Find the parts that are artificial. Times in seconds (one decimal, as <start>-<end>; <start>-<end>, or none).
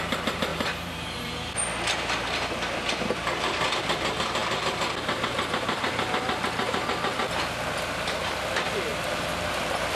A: 0.0-9.9